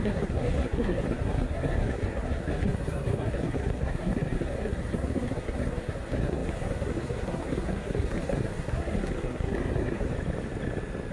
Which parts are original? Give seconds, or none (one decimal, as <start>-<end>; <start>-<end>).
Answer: 10.1-11.1